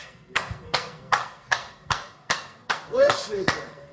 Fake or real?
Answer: fake